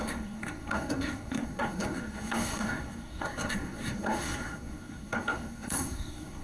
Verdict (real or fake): fake